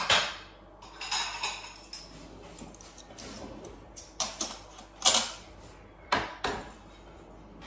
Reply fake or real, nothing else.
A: real